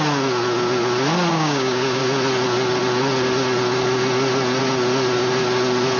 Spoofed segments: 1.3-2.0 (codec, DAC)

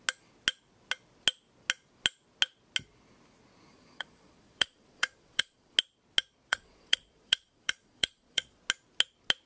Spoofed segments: 3.7-5.7 (vocoder, Vocos); 6.5-8.6

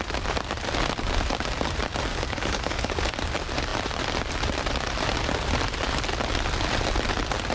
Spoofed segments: 2.1-2.9 (codec, DAC)

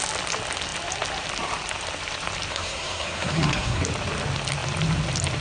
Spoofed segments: 2.5-3.8 (codec, SNAC)

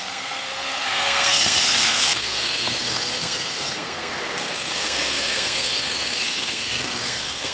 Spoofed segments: 0.0-7.5 (codec, SNAC)

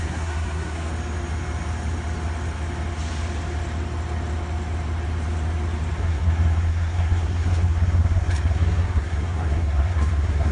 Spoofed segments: 0.0-0.9 (codec, SNAC); 6.0-10.5

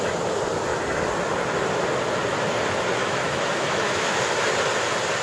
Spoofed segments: 3.0-4.2 (autoencoder, DAC-VAE)